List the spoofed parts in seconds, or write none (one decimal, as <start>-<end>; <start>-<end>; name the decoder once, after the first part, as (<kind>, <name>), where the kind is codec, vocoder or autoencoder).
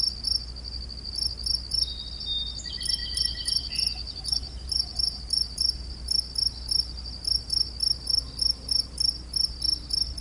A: 3.0-5.9 (vocoder, BigVGAN v2)